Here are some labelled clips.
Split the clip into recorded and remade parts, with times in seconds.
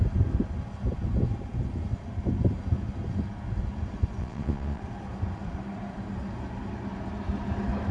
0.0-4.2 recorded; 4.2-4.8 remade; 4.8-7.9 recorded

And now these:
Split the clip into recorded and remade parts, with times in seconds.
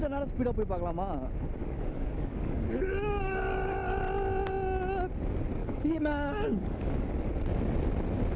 0.0-1.6 recorded; 1.6-4.0 remade; 4.0-5.6 recorded; 5.6-7.1 remade; 7.1-8.4 recorded